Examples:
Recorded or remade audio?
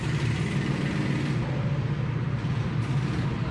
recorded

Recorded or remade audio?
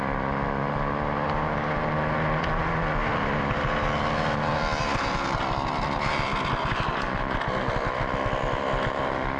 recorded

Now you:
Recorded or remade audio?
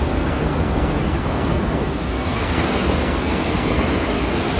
remade